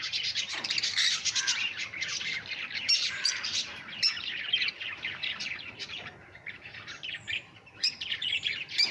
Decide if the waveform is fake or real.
fake